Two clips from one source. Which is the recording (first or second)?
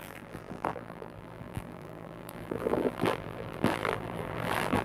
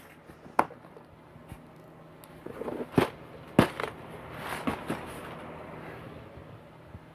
second